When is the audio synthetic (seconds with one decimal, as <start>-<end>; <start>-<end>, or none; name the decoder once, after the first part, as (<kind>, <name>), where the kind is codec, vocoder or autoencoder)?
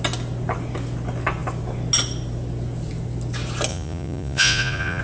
3.7-5.0 (vocoder, Vocos)